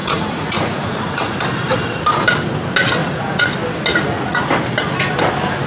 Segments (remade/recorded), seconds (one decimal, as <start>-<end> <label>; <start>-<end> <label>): 0.0-1.3 remade; 1.3-3.0 recorded; 3.0-3.5 remade; 3.5-3.9 recorded; 3.9-4.5 remade; 4.5-5.7 recorded